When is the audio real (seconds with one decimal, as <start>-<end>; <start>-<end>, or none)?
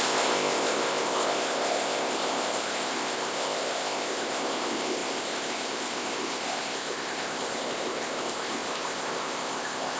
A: none